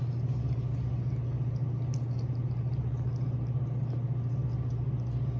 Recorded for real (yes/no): yes